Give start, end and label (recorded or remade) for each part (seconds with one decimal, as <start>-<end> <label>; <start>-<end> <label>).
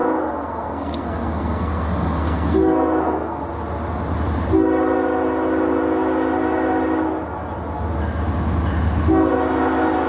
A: 0.0-3.4 remade; 3.4-10.1 recorded